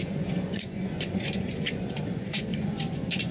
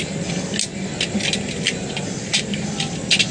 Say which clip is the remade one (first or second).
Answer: first